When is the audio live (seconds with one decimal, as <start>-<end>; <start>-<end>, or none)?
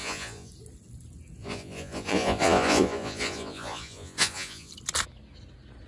0.5-1.4; 4.7-5.9